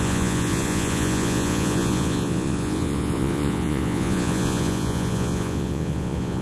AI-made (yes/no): yes